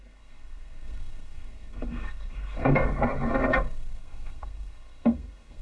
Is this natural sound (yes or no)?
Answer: no